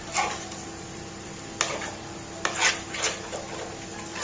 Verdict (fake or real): real